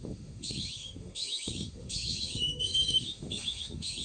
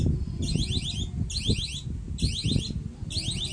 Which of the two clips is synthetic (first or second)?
first